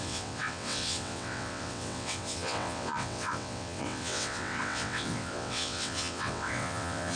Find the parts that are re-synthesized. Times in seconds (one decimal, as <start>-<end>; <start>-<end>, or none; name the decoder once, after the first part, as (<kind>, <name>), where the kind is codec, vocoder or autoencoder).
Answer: 0.0-7.2 (vocoder, WaveNeXt)